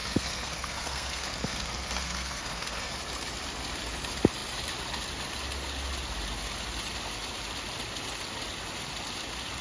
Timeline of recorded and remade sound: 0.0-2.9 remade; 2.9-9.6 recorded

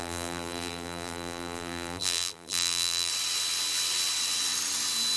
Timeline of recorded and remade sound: 0.0-3.1 remade; 3.1-5.2 recorded

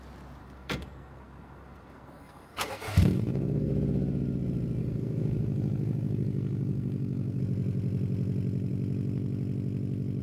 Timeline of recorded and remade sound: 0.0-0.4 recorded; 0.4-3.7 remade; 3.7-4.8 recorded; 4.8-7.4 remade; 7.4-10.2 recorded

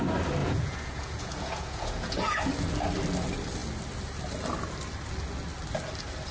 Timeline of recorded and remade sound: 0.0-0.4 recorded; 0.4-2.4 remade; 2.4-6.3 recorded

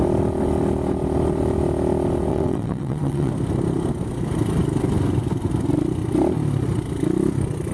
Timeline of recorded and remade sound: 0.0-2.3 recorded; 2.3-3.3 remade; 3.3-7.7 recorded

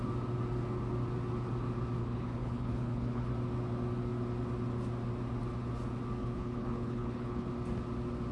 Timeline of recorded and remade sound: 0.0-2.0 recorded; 2.0-3.3 remade; 3.3-6.2 recorded; 6.2-7.5 remade; 7.5-8.3 recorded

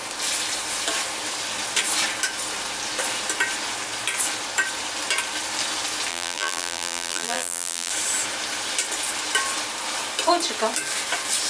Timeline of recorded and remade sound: 0.0-6.1 recorded; 6.1-7.9 remade; 7.9-11.5 recorded

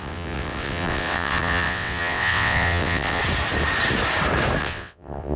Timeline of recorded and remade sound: 0.0-3.2 remade; 3.2-4.6 recorded; 4.6-5.4 remade